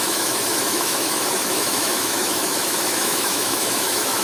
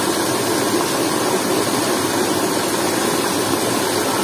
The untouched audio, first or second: second